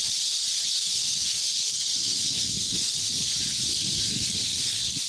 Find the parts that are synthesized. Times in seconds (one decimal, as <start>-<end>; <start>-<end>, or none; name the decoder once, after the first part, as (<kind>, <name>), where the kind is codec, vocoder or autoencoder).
0.8-3.3 (codec, SNAC); 3.7-5.1